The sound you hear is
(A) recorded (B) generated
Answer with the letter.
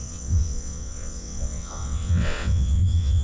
B